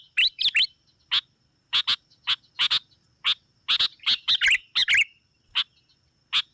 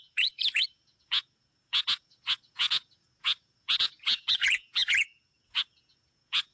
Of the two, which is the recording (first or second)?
first